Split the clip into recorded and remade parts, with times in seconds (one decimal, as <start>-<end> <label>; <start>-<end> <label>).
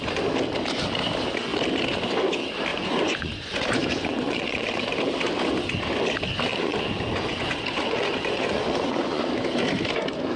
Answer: 0.0-2.7 recorded; 2.7-4.8 remade; 4.8-6.5 recorded; 6.5-9.2 remade; 9.2-10.4 recorded